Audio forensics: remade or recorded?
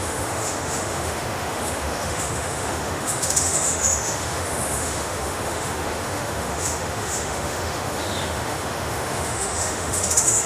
remade